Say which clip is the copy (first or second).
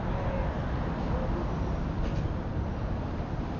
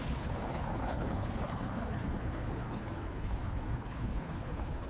second